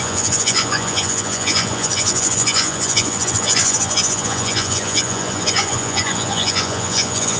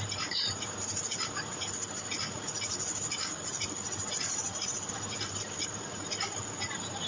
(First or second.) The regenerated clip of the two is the first